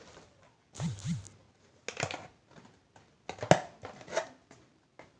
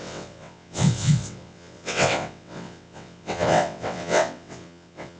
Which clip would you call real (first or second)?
first